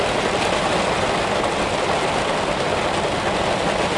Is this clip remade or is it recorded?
recorded